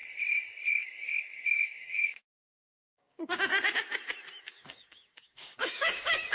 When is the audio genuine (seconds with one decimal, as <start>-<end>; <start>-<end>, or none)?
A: 0.0-0.7; 3.5-4.4